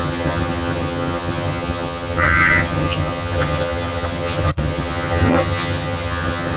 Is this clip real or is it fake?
fake